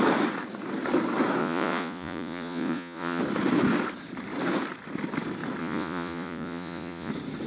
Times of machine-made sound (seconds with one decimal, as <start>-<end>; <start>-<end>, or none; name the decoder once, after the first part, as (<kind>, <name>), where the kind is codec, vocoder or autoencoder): 1.4-3.2 (vocoder, Vocos); 5.6-7.1